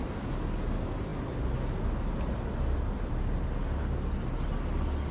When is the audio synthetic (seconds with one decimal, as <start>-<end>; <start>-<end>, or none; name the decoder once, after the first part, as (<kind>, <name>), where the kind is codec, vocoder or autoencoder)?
none